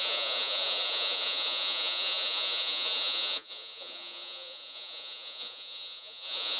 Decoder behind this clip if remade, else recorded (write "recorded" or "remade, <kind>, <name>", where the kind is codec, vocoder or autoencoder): remade, vocoder, Vocos